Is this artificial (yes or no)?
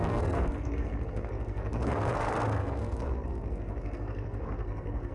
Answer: yes